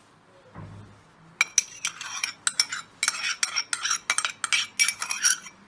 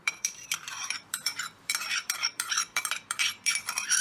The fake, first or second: second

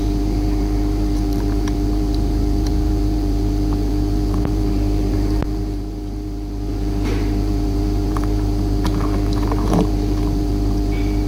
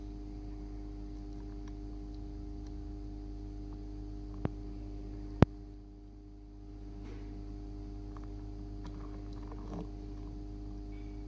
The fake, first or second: first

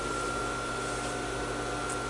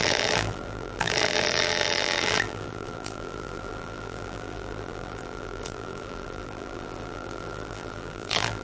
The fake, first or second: second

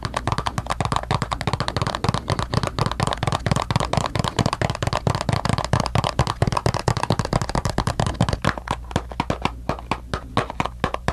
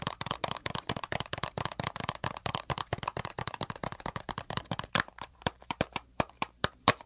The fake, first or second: second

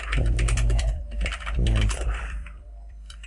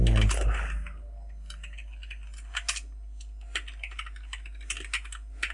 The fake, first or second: first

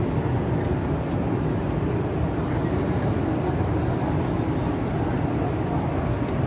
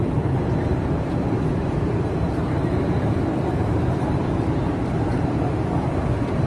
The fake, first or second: second